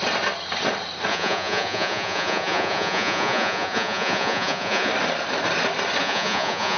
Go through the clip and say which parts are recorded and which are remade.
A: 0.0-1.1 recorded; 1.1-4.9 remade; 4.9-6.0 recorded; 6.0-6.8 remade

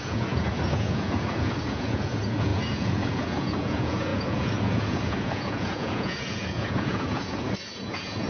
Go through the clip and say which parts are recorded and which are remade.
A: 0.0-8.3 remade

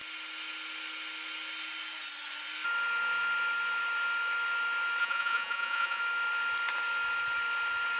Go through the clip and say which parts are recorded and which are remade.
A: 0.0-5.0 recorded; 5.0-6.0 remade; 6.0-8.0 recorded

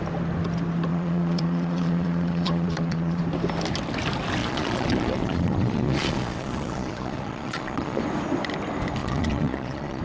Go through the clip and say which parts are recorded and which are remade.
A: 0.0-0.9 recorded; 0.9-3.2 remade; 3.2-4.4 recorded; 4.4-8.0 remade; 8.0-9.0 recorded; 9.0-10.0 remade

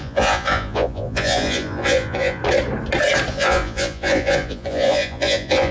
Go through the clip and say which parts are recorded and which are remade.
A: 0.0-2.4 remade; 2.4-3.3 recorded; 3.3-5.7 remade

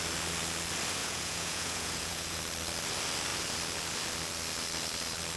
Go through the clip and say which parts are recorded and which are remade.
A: 0.0-1.0 recorded; 1.0-2.4 remade; 2.4-5.4 recorded

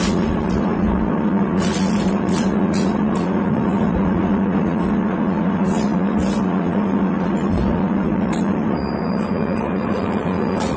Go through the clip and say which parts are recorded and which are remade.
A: 0.0-10.8 remade

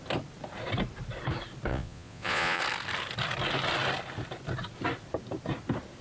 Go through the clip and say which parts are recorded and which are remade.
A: 0.0-1.7 recorded; 1.7-2.6 remade; 2.6-6.0 recorded